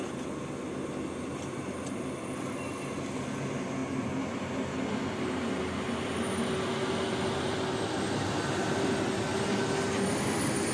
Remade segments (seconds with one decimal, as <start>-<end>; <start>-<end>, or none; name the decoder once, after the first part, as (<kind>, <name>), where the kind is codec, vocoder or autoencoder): none